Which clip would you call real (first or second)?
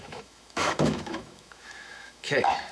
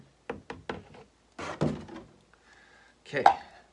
second